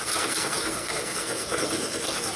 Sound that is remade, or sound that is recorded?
remade